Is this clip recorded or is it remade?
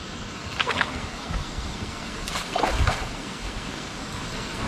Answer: remade